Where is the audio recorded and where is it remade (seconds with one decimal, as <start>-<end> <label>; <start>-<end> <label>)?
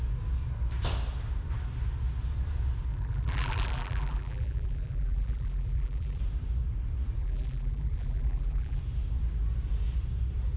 0.0-2.9 recorded; 2.9-6.2 remade; 6.2-7.2 recorded; 7.2-8.8 remade; 8.8-10.6 recorded